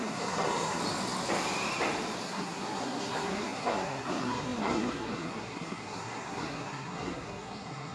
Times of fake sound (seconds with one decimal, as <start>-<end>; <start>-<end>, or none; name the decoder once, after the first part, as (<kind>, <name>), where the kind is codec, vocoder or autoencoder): 0.0-0.8 (codec, SNAC); 2.2-7.9